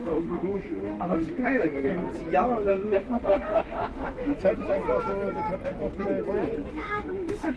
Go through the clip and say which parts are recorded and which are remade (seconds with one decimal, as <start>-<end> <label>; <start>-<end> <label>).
0.0-1.9 remade; 1.9-2.7 recorded; 2.7-4.3 remade; 4.3-6.7 recorded; 6.7-7.6 remade